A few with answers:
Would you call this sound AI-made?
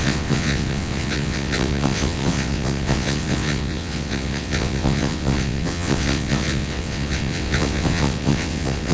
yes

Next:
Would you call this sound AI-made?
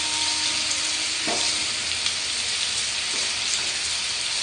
no